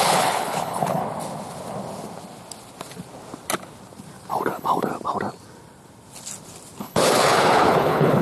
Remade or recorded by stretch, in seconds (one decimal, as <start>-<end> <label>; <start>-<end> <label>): 0.0-1.0 remade; 1.0-4.3 recorded; 4.3-4.9 remade; 4.9-6.8 recorded; 6.8-8.2 remade